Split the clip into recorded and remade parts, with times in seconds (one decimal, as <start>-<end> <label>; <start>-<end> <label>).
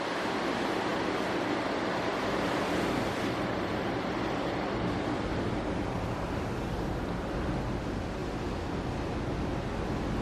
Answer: 0.0-5.3 recorded; 5.3-7.6 remade; 7.6-10.2 recorded